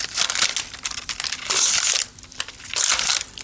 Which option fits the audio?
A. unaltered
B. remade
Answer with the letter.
A